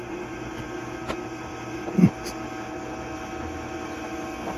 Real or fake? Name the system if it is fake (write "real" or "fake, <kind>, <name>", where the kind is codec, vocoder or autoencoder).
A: real